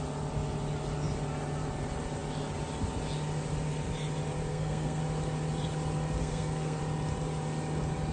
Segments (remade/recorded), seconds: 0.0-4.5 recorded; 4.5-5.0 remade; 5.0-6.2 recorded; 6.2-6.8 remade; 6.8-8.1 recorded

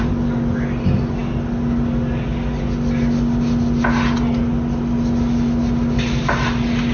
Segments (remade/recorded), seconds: 0.0-6.9 recorded

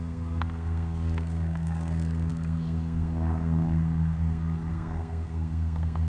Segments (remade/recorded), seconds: 0.0-6.1 remade

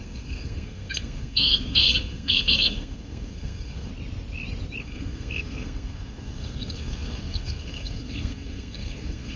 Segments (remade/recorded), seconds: 0.0-3.9 remade; 3.9-4.8 recorded; 4.8-9.4 remade

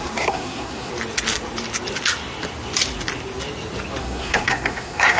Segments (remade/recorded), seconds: 0.0-0.9 remade; 0.9-4.0 recorded; 4.0-5.2 remade

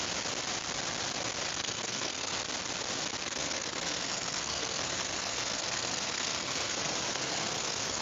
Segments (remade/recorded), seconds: 0.0-1.5 recorded; 1.5-2.4 remade; 2.4-3.2 recorded; 3.2-8.0 remade